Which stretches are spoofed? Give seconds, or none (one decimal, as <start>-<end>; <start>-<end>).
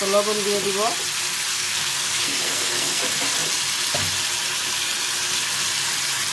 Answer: 1.5-3.0